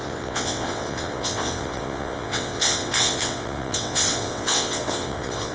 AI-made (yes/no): yes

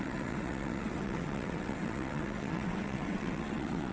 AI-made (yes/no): yes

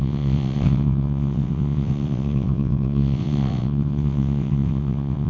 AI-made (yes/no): yes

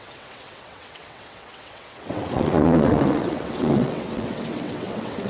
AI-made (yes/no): yes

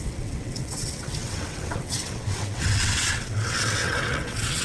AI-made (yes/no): yes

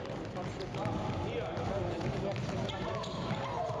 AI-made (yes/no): no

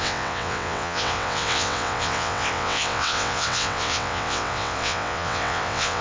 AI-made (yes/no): yes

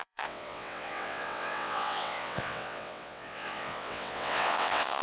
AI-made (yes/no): yes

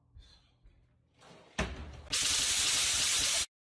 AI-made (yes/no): no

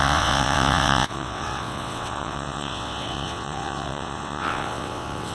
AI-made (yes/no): yes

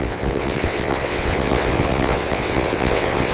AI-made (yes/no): yes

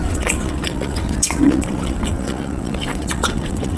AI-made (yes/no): yes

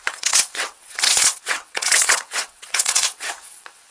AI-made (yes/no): yes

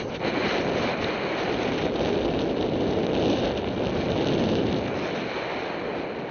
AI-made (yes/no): no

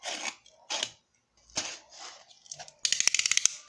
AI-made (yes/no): no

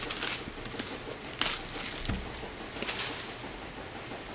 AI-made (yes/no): no